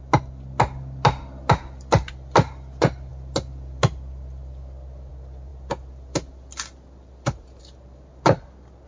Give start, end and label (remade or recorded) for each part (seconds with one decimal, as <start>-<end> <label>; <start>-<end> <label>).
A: 0.0-8.9 recorded